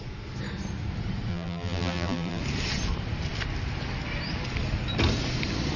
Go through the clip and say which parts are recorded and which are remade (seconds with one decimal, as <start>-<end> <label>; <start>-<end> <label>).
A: 0.0-1.3 recorded; 1.3-2.4 remade; 2.4-5.8 recorded